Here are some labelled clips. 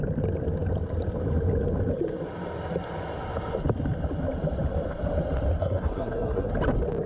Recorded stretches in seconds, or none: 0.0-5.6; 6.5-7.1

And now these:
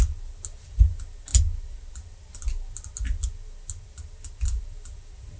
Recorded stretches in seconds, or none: 0.0-5.4

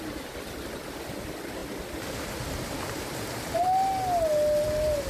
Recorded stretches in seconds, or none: 0.0-5.1

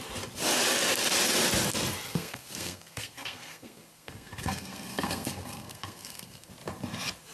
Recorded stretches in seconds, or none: 0.0-2.1; 6.5-7.3

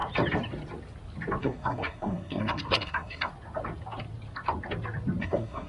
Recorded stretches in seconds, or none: 0.0-1.4; 3.3-5.2

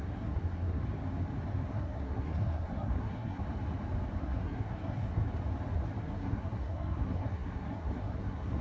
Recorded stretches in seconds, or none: 0.8-1.7; 3.4-4.2; 5.2-6.0